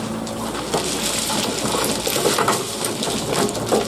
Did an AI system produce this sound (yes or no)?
no